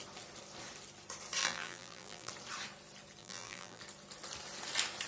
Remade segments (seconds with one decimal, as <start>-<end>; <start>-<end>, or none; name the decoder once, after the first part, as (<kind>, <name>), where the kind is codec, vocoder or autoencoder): 1.4-2.3 (vocoder, BigVGAN v2); 3.2-3.8